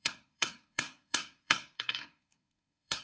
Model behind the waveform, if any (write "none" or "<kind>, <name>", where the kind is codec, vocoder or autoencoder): codec, SNAC